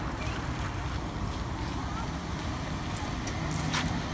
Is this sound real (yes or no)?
yes